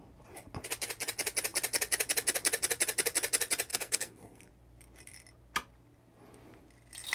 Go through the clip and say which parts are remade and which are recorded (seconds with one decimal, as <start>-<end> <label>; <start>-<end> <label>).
0.0-3.7 recorded; 3.7-4.5 remade; 4.5-7.1 recorded